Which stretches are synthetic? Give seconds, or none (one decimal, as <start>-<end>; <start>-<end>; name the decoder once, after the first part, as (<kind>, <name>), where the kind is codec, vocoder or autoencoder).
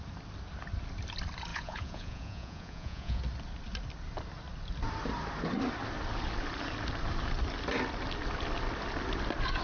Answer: 1.5-3.2 (vocoder, Vocos)